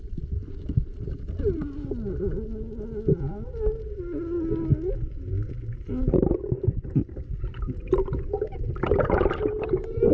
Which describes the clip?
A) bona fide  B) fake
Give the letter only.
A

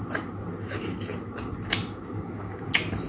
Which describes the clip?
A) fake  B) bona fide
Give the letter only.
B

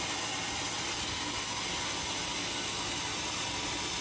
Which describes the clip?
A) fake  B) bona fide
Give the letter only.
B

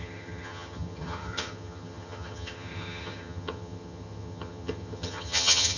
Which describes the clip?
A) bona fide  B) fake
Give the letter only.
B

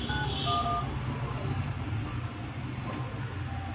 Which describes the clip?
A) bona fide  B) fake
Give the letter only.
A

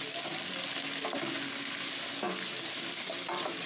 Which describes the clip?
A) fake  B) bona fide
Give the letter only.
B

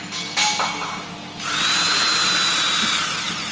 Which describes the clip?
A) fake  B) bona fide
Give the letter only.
B